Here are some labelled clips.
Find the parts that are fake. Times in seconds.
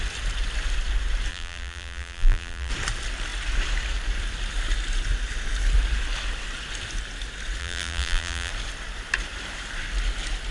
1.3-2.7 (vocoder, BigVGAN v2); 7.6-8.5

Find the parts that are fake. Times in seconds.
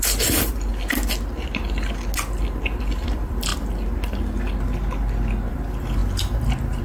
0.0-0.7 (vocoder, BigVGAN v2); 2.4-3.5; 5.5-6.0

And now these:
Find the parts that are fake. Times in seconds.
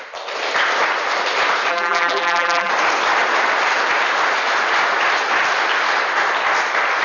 1.7-2.7 (vocoder, BigVGAN v2)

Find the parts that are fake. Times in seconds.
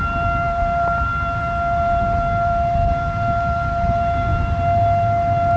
0.0-5.6 (vocoder, BigVGAN v2)